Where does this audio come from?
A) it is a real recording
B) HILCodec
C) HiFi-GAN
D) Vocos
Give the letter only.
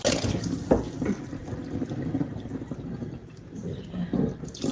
A